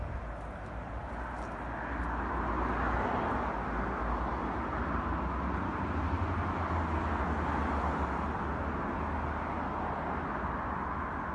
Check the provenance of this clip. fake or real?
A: real